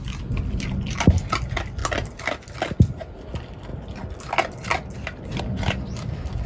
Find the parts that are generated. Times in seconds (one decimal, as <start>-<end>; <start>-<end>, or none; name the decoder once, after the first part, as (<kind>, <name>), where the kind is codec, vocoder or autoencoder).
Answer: none